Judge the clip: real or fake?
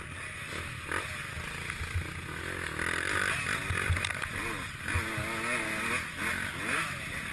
real